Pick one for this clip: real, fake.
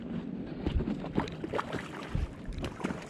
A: real